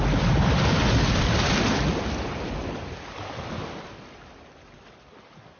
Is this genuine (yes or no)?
yes